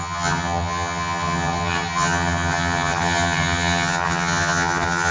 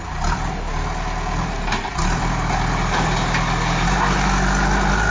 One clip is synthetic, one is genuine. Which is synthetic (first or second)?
first